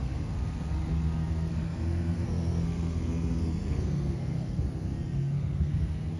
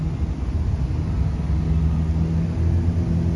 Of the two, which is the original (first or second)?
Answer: second